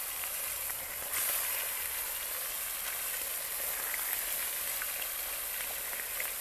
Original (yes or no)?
yes